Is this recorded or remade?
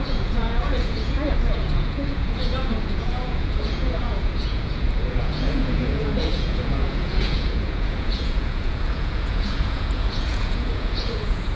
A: remade